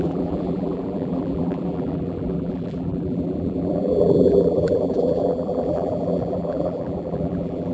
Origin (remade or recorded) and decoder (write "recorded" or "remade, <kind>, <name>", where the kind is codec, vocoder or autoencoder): remade, vocoder, BigVGAN v2